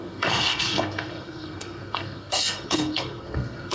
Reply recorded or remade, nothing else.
remade